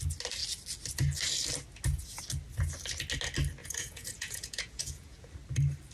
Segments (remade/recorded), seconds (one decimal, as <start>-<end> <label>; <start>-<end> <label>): 0.0-3.6 recorded; 3.6-5.3 remade; 5.3-5.9 recorded